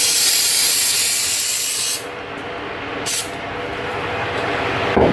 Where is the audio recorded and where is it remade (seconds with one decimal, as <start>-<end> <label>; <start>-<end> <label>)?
0.0-1.4 remade; 1.4-3.9 recorded; 3.9-5.1 remade